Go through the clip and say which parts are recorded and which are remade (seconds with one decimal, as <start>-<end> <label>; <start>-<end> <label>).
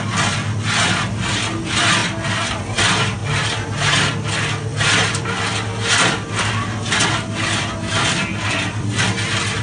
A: 0.0-9.6 recorded